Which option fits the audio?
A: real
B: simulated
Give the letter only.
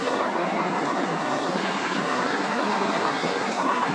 B